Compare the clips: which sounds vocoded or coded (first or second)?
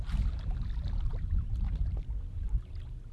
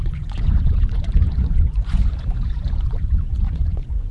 second